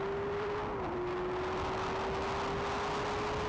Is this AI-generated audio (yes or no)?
no